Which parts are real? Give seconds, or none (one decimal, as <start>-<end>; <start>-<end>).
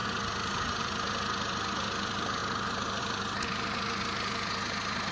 0.0-5.1